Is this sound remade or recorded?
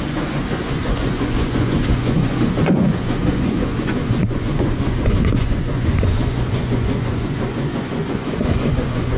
remade